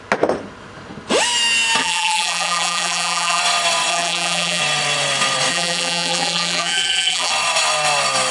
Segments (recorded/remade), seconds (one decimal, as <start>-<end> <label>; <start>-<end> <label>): 0.0-1.8 recorded; 1.8-3.4 remade; 3.4-3.9 recorded; 3.9-4.6 remade; 4.6-5.5 recorded; 5.5-7.3 remade; 7.3-8.3 recorded